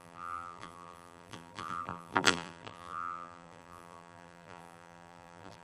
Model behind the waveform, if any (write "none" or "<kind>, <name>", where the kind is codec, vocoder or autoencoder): vocoder, BigVGAN v2